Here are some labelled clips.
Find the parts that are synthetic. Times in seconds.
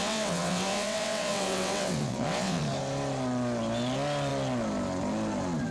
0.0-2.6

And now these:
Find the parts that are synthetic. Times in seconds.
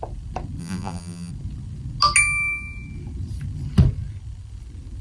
0.6-1.3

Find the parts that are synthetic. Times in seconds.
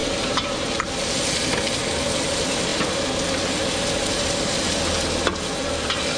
0.0-0.5